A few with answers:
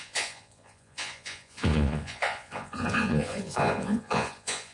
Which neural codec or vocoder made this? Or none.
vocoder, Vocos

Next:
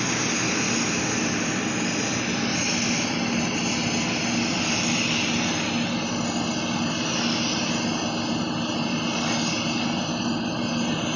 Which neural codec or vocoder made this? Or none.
none